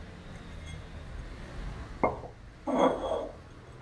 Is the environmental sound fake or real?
real